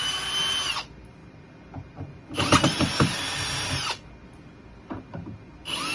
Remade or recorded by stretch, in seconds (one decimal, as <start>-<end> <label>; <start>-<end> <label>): 0.0-5.9 recorded